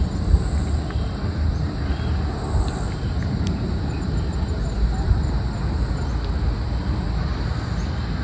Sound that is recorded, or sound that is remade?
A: recorded